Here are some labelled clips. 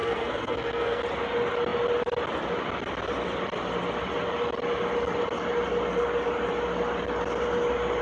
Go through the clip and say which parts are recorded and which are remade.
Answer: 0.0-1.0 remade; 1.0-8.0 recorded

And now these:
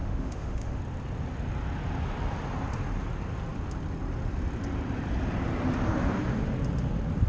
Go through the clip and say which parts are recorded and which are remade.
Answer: 0.0-0.8 remade; 0.8-7.3 recorded

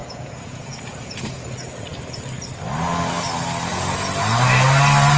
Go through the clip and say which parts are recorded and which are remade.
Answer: 0.0-1.4 remade; 1.4-5.2 recorded

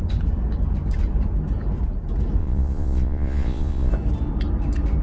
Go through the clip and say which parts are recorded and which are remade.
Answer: 0.0-2.4 recorded; 2.4-3.9 remade; 3.9-5.0 recorded

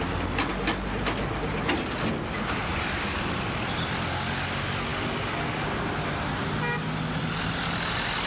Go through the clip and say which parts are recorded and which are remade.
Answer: 0.0-2.7 recorded; 2.7-3.7 remade; 3.7-8.3 recorded